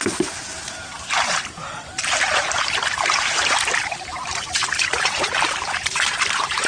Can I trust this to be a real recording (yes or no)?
no